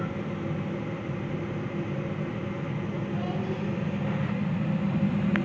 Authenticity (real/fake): real